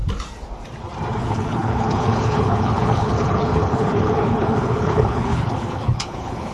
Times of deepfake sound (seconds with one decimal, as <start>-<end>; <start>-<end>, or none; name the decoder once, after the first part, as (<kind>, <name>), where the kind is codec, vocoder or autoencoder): 1.2-6.5 (codec, HILCodec)